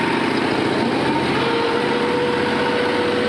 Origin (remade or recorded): recorded